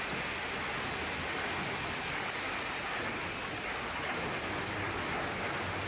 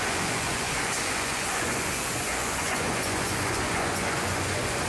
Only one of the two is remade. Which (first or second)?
second